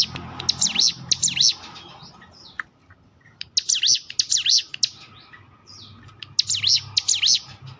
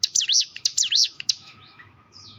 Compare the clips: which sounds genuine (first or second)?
first